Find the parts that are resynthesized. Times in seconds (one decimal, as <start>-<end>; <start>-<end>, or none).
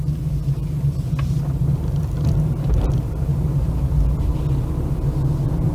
0.0-0.6; 1.4-3.3; 4.7-5.7